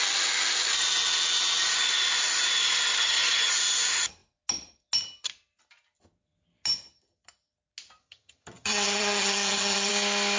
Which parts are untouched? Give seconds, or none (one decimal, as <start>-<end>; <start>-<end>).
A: 0.0-2.9; 3.5-8.0; 9.9-10.4